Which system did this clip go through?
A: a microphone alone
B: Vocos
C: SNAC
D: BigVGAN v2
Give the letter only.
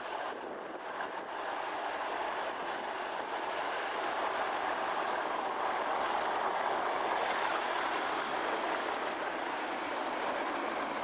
A